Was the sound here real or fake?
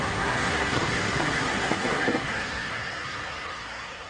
fake